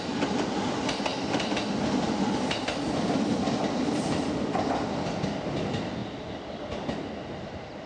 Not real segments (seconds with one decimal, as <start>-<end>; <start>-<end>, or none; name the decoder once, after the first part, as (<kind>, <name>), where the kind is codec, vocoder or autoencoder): none